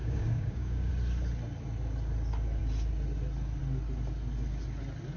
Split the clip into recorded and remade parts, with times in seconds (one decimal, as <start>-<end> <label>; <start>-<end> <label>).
0.0-0.9 remade; 0.9-5.2 recorded